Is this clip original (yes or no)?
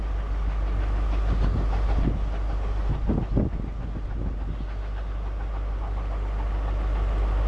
yes